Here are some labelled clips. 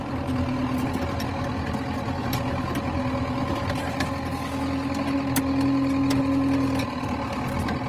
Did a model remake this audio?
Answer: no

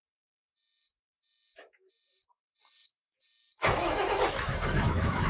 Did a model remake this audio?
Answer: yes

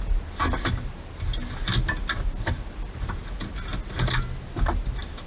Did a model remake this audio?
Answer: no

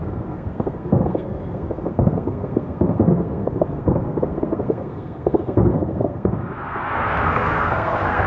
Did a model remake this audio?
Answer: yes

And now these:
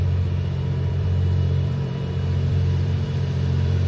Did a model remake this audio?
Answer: yes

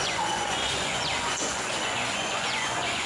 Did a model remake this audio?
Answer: yes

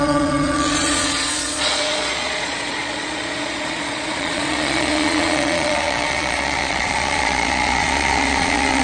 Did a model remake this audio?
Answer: yes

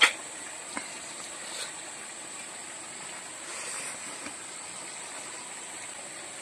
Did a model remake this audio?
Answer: no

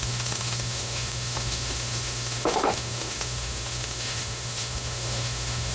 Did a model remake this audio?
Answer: yes